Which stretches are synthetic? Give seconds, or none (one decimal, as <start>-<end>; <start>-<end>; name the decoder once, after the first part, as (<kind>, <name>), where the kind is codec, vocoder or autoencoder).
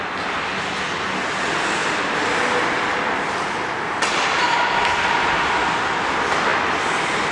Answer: 1.8-4.1 (vocoder, BigVGAN v2); 6.5-7.3